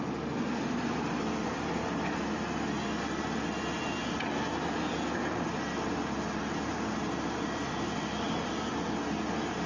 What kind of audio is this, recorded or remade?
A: recorded